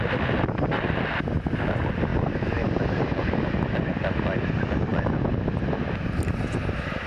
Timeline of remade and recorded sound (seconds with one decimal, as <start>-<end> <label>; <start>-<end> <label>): 0.0-7.1 recorded